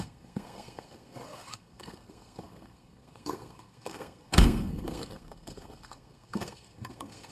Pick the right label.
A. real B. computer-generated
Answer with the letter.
B